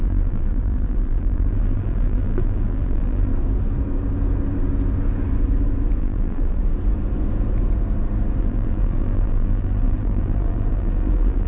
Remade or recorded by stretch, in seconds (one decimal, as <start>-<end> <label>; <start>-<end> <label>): 0.0-3.3 remade; 3.3-6.0 recorded; 6.0-6.6 remade; 6.6-8.4 recorded; 8.4-11.5 remade